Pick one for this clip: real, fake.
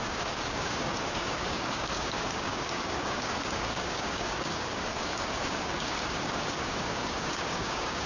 fake